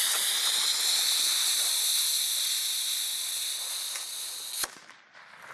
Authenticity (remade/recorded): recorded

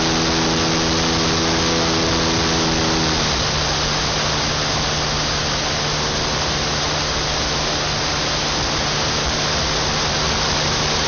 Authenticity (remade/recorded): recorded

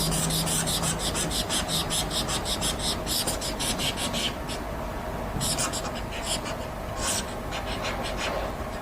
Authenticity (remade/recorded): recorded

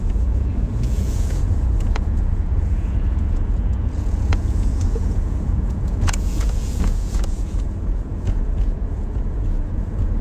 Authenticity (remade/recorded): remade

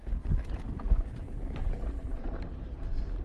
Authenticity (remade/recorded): recorded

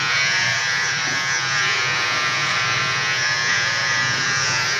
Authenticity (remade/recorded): remade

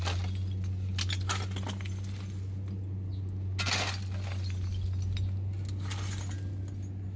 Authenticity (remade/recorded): recorded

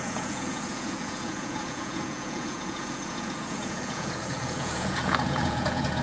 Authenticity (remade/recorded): remade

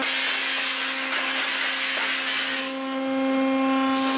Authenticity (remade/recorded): recorded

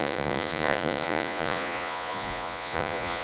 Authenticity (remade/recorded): remade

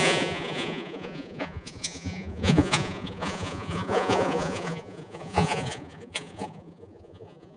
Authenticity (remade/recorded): remade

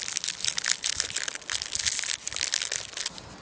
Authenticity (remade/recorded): recorded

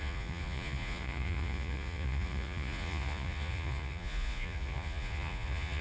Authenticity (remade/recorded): remade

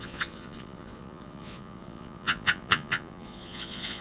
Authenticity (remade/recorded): remade